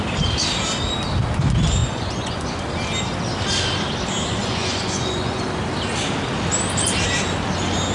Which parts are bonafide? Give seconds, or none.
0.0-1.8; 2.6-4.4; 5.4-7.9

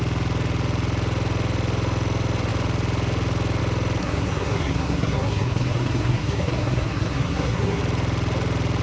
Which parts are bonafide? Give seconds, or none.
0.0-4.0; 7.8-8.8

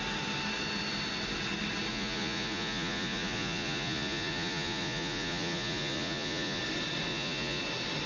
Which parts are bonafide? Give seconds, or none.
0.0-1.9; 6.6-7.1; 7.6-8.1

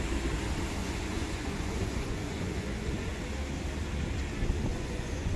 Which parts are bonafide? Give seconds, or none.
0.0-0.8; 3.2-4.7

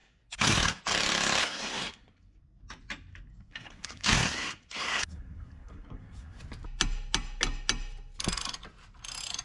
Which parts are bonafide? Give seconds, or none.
0.8-1.4; 2.6-3.3; 6.4-9.4

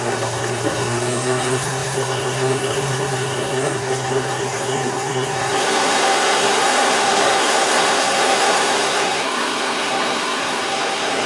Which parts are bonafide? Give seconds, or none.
none

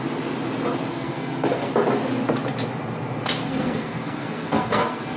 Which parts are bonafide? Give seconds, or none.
0.0-0.9; 1.7-3.4

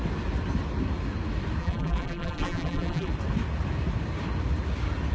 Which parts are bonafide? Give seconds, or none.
0.0-1.6; 3.1-5.1